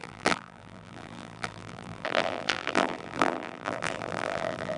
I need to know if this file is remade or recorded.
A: remade